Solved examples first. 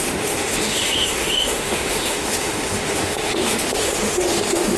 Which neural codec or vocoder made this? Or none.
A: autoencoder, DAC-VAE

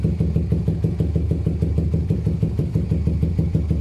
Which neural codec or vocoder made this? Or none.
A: vocoder, BigVGAN v2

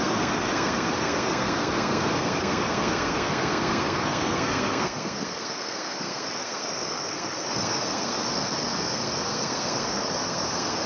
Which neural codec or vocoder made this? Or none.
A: codec, SNAC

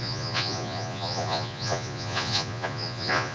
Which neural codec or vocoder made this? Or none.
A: vocoder, Vocos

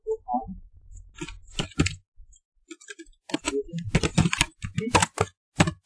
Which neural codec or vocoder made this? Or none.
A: none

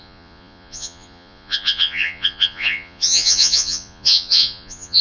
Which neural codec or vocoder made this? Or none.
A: vocoder, Vocos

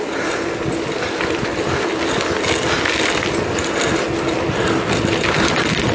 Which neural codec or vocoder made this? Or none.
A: none